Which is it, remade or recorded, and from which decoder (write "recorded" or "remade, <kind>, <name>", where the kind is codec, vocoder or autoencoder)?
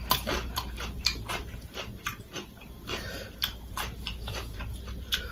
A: remade, vocoder, BigVGAN v2